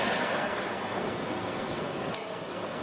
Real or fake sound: fake